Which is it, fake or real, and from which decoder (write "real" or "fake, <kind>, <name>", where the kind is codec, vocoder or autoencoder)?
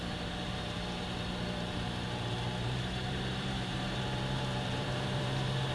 fake, vocoder, BigVGAN v2